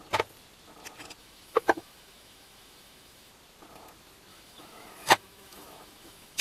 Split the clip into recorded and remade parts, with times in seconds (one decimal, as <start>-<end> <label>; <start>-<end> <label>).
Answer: 0.0-1.2 recorded; 1.2-3.3 remade; 3.3-4.3 recorded; 4.3-6.4 remade